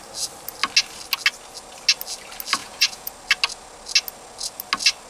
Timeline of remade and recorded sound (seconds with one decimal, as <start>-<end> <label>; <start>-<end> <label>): 0.0-2.6 recorded; 2.6-3.1 remade; 3.1-5.1 recorded